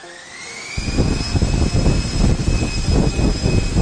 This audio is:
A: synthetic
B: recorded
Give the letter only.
B